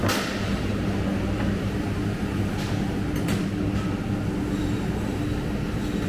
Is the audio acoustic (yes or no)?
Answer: yes